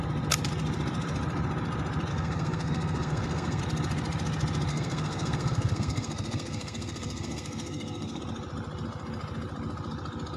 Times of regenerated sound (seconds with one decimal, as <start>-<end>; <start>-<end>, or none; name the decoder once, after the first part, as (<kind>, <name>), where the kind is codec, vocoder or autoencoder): 2.1-3.6 (codec, SNAC); 4.7-8.2